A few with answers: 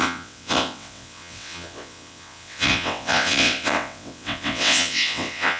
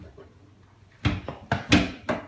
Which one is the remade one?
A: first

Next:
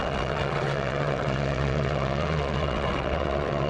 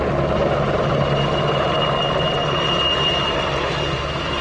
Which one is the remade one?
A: first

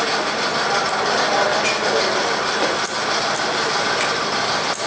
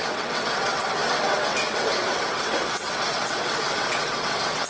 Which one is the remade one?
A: second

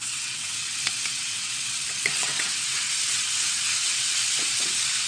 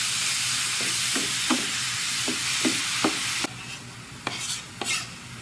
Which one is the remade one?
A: first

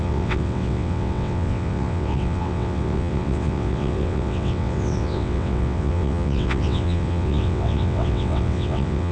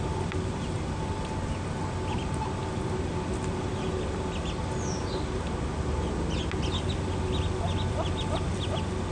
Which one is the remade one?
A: first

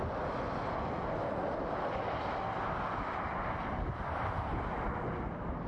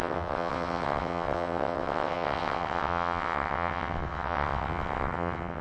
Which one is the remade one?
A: second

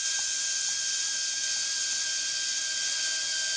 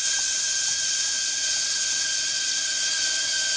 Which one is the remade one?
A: second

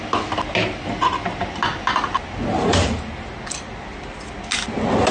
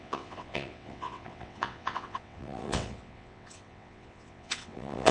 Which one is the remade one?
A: second